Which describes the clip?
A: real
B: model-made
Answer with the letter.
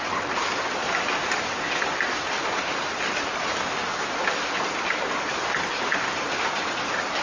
A